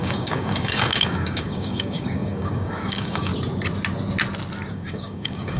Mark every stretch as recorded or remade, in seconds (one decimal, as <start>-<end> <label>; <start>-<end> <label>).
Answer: 0.0-3.3 remade; 3.3-4.7 recorded; 4.7-5.6 remade